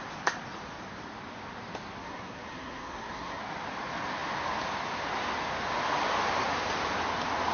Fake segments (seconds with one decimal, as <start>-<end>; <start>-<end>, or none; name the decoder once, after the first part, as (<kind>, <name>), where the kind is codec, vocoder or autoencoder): 2.0-3.4 (codec, SNAC)